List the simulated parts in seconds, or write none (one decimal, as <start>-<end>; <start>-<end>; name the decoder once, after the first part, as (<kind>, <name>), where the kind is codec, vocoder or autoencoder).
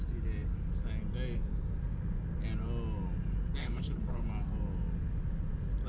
3.6-4.2 (codec, HILCodec)